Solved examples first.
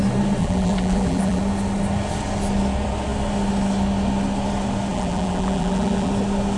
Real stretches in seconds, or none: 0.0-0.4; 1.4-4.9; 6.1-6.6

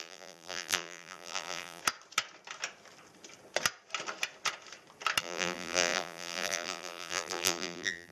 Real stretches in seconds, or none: 1.8-5.2